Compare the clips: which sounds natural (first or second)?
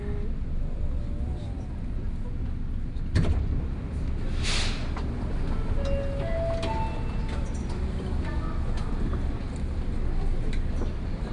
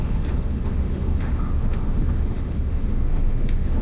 first